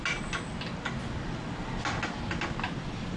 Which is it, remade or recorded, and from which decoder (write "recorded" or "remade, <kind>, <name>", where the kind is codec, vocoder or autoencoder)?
recorded